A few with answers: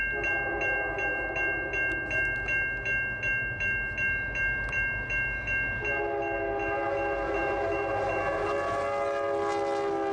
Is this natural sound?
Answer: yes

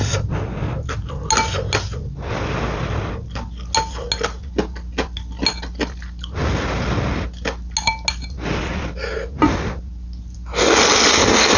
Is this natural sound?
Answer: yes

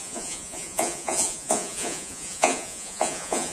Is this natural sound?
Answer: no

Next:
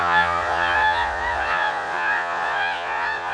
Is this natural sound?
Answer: no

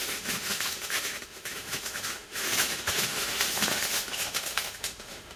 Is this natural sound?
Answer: no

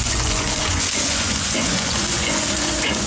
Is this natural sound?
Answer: no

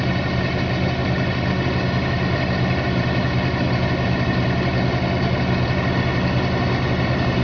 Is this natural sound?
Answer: yes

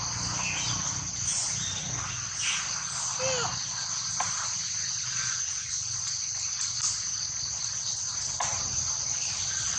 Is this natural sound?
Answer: yes